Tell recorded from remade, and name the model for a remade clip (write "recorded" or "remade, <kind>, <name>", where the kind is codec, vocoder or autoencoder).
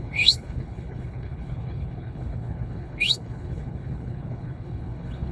remade, codec, HILCodec